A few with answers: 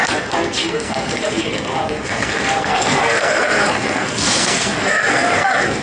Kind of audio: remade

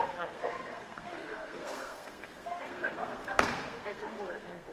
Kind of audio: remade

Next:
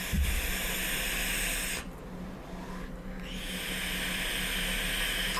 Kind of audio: recorded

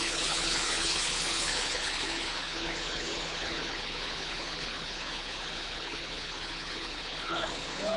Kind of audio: remade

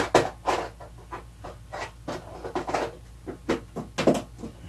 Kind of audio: recorded